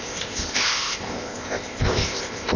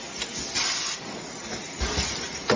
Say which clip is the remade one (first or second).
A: first